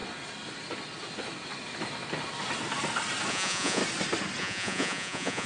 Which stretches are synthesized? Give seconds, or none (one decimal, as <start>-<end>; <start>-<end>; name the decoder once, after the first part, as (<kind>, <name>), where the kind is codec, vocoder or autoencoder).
3.3-3.8 (vocoder, Vocos); 4.4-5.5